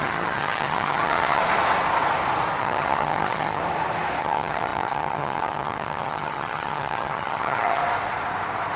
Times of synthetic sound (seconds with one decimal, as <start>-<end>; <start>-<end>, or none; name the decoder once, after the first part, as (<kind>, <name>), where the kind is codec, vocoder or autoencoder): 0.0-1.4 (vocoder, HiFi-GAN); 2.6-3.6; 4.2-7.8